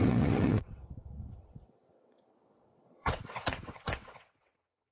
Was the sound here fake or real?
fake